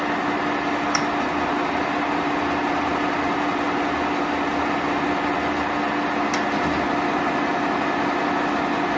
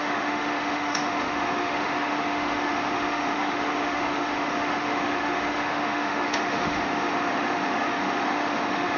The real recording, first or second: first